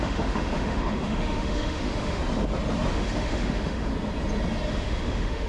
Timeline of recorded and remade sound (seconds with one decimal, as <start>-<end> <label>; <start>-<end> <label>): 0.0-2.2 remade; 2.2-2.9 recorded; 2.9-3.9 remade; 3.9-4.7 recorded; 4.7-5.5 remade

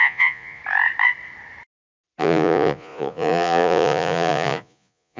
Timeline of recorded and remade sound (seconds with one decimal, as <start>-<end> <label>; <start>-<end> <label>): 0.0-0.6 remade; 0.6-2.2 recorded; 2.2-5.2 remade

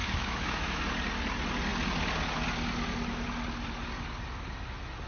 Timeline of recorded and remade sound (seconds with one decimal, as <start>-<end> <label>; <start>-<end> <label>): 0.0-0.8 remade; 0.8-5.1 recorded